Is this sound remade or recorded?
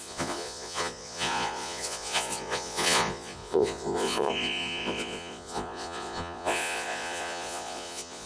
remade